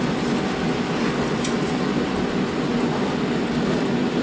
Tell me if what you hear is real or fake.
real